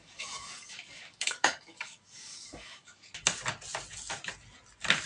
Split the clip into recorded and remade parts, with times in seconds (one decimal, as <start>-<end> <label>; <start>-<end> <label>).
0.0-3.1 remade; 3.1-5.1 recorded